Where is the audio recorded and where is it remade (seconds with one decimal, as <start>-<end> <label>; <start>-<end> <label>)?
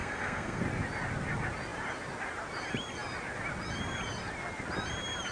0.0-0.6 remade; 0.6-5.3 recorded